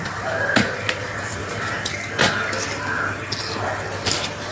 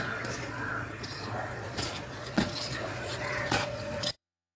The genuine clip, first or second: first